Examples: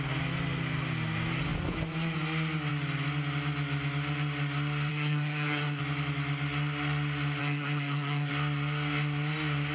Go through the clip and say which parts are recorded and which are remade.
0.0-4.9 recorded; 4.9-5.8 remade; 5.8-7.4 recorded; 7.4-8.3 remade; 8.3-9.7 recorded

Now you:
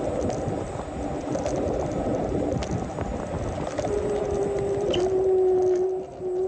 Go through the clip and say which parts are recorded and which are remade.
0.0-6.5 recorded